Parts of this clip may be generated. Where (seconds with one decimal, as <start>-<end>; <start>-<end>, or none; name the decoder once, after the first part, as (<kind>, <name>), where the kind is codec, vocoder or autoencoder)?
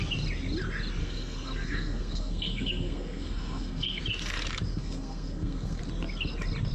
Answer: 1.0-4.0 (codec, SNAC); 4.7-5.8